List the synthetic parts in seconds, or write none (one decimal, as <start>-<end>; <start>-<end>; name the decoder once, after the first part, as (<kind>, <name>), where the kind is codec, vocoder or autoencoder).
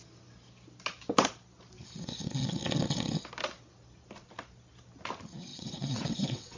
5.5-6.6 (vocoder, WaveNeXt)